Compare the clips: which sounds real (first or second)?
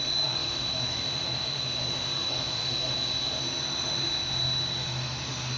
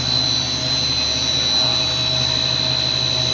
second